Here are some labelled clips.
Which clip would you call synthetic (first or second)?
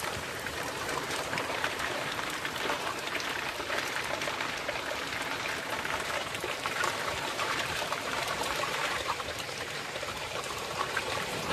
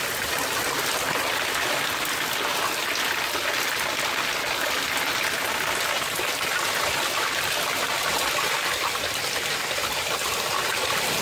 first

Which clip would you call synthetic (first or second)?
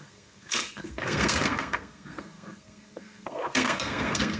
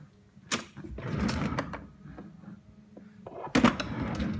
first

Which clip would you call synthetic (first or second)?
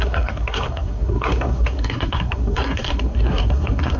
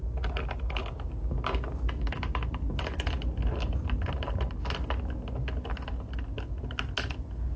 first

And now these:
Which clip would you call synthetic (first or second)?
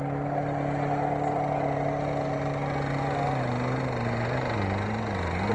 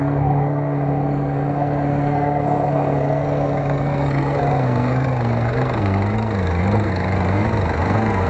second